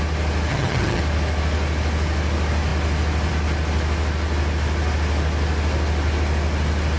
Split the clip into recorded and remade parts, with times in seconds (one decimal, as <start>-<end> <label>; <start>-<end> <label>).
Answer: 0.0-0.5 recorded; 0.5-1.0 remade; 1.0-7.0 recorded